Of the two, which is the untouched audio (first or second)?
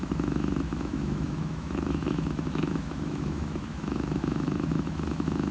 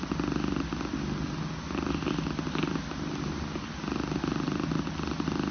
second